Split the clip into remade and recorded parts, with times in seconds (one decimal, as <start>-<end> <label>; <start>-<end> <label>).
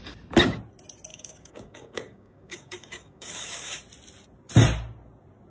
0.0-1.1 recorded; 1.1-3.8 remade; 3.8-5.5 recorded